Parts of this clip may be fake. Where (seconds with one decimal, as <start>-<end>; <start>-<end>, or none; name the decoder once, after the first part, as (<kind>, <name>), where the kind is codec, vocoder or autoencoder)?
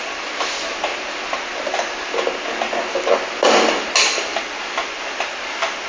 none